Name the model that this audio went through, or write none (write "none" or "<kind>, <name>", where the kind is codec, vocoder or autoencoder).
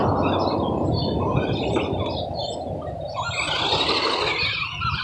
none